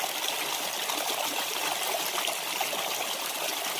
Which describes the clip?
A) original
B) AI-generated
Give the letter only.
A